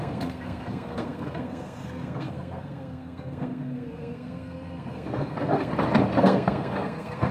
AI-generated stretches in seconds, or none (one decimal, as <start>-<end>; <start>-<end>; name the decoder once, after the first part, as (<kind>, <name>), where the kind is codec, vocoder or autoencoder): 0.0-5.7 (codec, SNAC); 6.2-7.3